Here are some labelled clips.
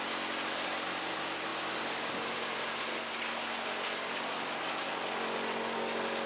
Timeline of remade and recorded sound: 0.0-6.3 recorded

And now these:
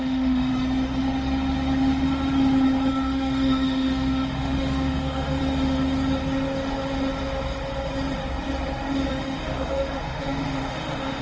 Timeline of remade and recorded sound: 0.0-0.5 remade; 0.5-2.9 recorded; 2.9-5.4 remade; 5.4-9.1 recorded; 9.1-11.2 remade